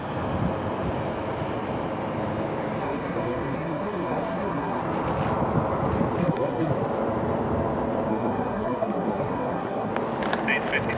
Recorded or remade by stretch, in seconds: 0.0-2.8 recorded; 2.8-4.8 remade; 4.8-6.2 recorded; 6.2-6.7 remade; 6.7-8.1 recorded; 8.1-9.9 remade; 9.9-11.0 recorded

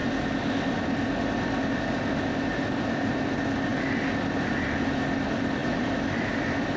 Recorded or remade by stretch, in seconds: 0.0-5.6 recorded; 5.6-6.3 remade; 6.3-6.8 recorded